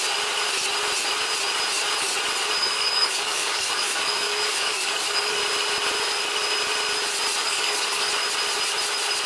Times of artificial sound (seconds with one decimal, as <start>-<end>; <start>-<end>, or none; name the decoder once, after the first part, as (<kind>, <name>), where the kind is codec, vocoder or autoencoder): 2.6-5.4 (codec, DAC); 7.4-8.1